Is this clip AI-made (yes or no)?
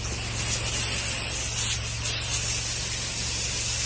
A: no